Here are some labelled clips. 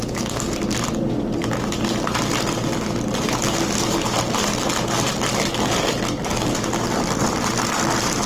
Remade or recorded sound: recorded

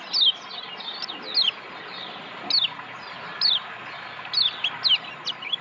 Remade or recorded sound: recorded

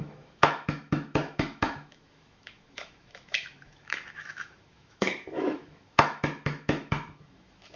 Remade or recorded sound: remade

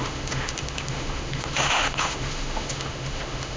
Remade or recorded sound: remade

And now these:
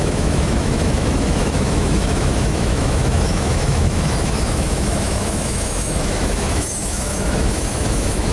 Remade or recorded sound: remade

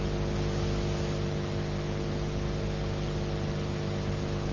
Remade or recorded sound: recorded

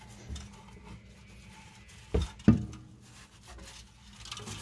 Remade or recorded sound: recorded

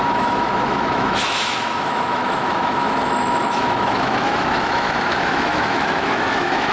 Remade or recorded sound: remade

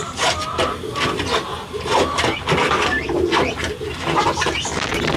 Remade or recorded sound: recorded